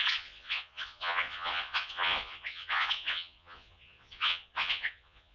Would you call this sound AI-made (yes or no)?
yes